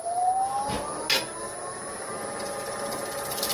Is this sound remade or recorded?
recorded